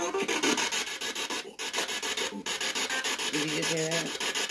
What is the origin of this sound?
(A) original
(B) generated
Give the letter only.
A